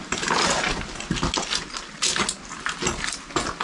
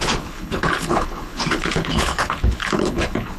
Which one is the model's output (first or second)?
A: second